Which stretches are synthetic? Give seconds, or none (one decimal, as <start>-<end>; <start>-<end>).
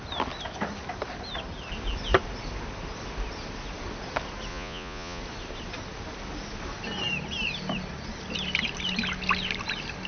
4.5-5.2